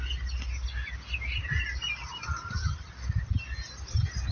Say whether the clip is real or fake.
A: real